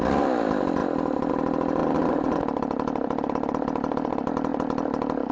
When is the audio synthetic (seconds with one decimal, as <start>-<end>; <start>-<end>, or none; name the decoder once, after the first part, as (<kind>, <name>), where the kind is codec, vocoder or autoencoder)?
none